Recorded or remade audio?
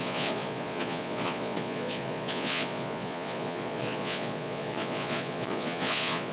remade